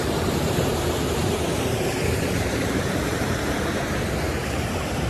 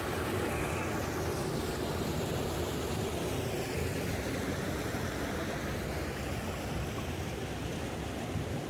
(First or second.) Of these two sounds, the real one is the second